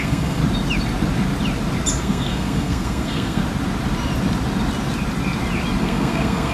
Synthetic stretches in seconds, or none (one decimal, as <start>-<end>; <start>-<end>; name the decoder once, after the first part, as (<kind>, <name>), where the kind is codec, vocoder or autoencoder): 0.0-0.4 (codec, SNAC); 2.0-3.4; 5.8-6.5